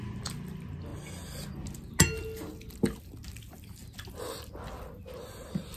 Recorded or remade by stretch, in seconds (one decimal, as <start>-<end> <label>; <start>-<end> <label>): 0.0-5.8 recorded